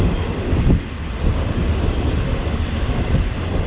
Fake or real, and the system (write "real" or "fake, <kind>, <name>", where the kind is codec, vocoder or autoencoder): real